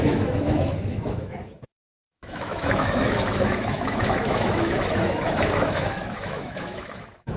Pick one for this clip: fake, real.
fake